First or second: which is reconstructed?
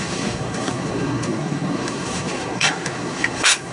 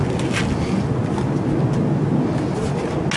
first